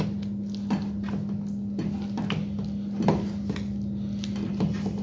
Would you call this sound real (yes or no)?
yes